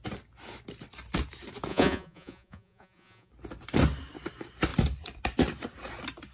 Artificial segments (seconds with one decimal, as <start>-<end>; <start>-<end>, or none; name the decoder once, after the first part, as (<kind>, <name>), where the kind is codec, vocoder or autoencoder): 1.7-3.3 (vocoder, Vocos)